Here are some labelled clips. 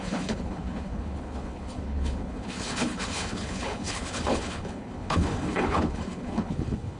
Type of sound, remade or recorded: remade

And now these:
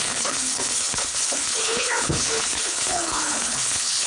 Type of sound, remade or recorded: remade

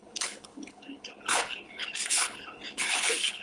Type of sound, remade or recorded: remade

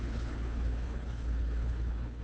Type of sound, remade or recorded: remade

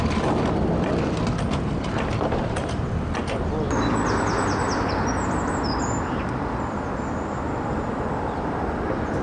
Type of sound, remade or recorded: recorded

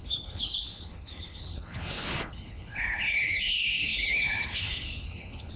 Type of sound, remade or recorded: remade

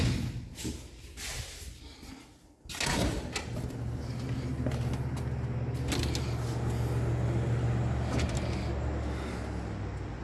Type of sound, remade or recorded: recorded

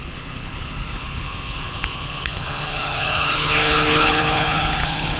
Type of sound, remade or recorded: remade